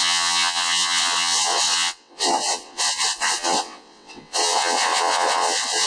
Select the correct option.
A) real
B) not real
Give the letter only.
B